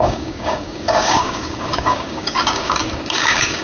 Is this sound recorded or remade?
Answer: remade